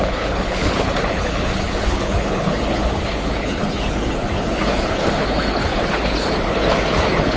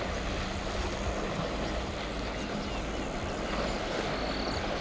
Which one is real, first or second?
second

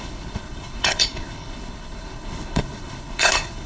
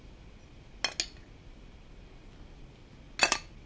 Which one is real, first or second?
second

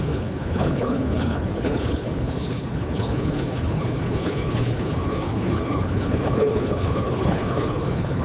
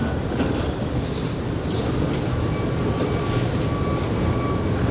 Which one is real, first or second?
second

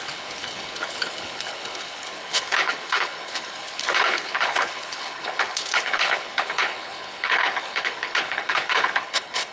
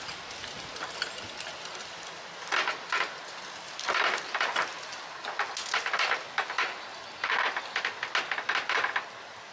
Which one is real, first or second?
second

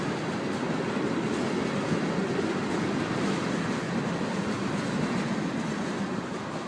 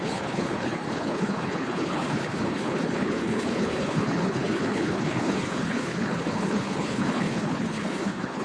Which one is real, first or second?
first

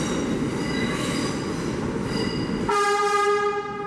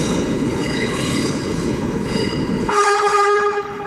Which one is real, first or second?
first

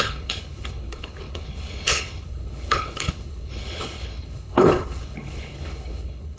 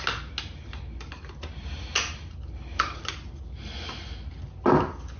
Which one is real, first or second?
second